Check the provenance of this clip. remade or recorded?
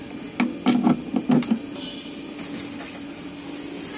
recorded